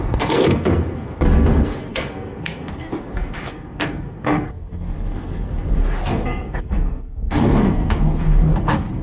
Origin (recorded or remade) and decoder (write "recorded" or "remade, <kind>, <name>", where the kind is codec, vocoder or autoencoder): remade, codec, SNAC